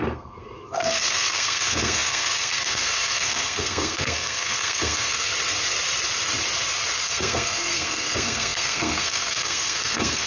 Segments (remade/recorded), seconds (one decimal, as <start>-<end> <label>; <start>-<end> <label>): 0.0-5.3 remade; 5.3-7.0 recorded; 7.0-10.3 remade